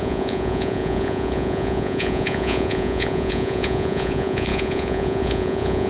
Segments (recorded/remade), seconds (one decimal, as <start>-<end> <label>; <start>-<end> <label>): 0.0-5.9 remade